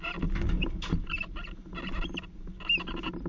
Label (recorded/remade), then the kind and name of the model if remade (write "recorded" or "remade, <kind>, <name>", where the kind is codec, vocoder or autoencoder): recorded